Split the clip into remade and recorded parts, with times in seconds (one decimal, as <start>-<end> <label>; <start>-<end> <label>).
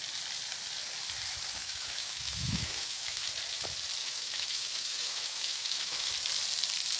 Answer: 0.0-1.6 recorded; 1.6-3.3 remade; 3.3-4.0 recorded; 4.0-6.1 remade; 6.1-7.0 recorded